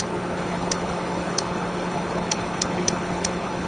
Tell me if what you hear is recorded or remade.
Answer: remade